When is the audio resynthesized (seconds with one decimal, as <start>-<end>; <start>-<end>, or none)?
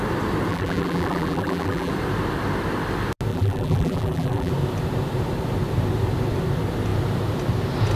0.5-1.9; 3.3-4.5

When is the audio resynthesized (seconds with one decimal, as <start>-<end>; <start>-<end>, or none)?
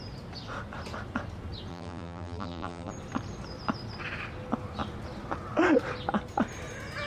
1.7-2.9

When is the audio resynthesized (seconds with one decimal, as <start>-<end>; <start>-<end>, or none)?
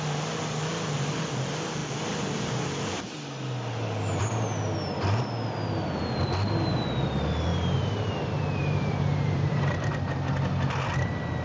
7.5-8.1; 8.6-9.9